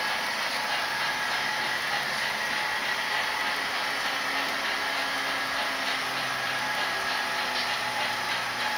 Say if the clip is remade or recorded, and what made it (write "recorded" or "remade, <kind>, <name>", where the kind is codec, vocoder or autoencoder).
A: recorded